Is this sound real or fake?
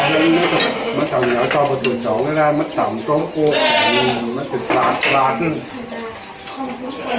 real